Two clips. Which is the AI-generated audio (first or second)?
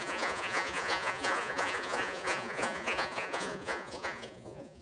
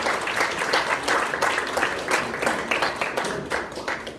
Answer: first